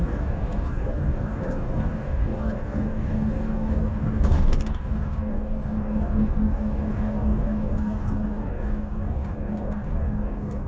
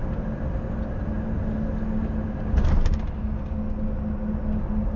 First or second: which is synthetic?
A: first